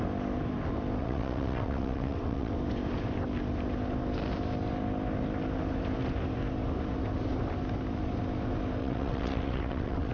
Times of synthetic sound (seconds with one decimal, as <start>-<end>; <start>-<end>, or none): 1.0-2.5; 8.8-10.1